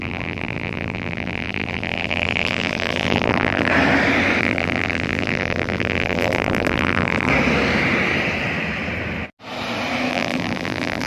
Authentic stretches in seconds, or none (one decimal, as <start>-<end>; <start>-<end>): 3.7-4.4; 7.3-10.1

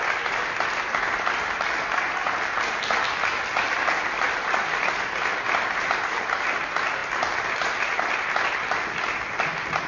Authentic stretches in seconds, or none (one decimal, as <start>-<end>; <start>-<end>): 0.0-9.9

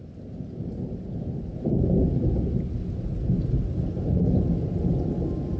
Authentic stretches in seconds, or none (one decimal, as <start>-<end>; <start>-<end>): 0.0-5.6

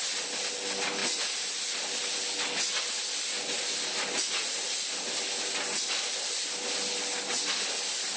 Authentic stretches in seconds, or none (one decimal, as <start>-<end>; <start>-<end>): 0.0-8.2

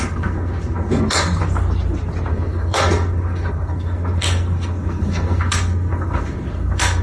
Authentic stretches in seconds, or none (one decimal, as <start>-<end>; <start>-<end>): 1.4-2.3

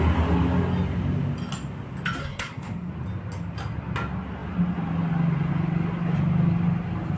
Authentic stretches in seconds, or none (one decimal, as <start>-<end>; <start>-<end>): 0.0-2.2; 2.9-7.2